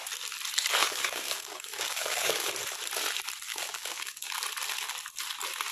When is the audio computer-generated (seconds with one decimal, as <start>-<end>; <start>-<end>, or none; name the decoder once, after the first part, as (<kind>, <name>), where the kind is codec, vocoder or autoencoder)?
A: 0.8-2.5 (codec, DAC); 3.5-4.3